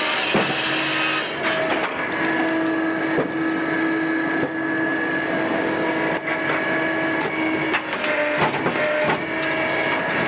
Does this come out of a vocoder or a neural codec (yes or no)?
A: no